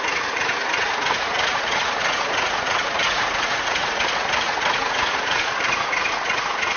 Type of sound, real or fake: fake